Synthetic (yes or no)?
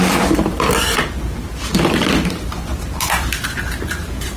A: no